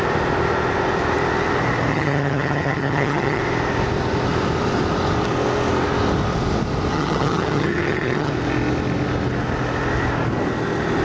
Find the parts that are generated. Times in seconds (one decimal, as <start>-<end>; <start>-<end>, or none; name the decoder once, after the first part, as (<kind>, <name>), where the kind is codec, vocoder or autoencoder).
1.9-3.4 (vocoder, HiFi-GAN); 6.9-8.3